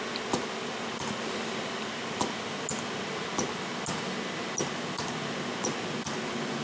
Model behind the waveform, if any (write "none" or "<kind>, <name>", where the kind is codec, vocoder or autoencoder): none